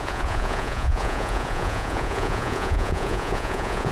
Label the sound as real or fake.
fake